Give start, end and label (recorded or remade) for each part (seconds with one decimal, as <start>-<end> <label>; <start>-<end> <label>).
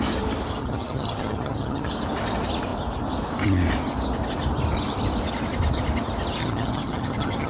0.0-0.6 recorded; 0.6-1.9 remade; 1.9-6.4 recorded; 6.4-7.5 remade